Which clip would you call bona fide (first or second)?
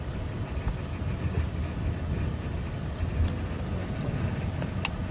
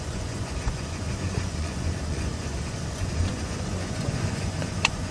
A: first